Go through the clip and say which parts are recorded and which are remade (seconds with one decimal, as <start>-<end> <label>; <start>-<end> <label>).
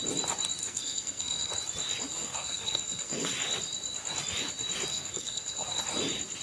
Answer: 0.0-0.6 recorded; 0.6-1.5 remade; 1.5-2.1 recorded; 2.1-3.3 remade; 3.3-4.9 recorded; 4.9-5.8 remade; 5.8-6.4 recorded